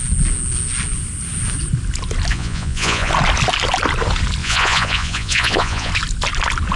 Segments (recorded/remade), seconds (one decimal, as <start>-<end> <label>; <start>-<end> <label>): 0.0-2.3 recorded; 2.3-3.1 remade; 3.1-4.4 recorded; 4.4-5.9 remade; 5.9-6.8 recorded